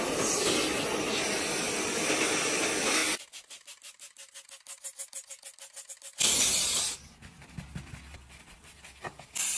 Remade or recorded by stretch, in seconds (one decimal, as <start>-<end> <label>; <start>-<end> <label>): 0.0-9.6 recorded